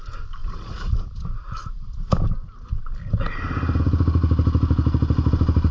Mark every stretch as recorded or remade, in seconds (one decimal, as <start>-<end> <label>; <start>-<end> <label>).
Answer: 0.0-0.4 recorded; 0.4-3.8 remade; 3.8-5.7 recorded